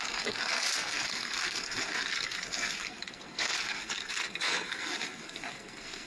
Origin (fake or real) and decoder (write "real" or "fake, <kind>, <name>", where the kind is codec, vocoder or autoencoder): fake, codec, SNAC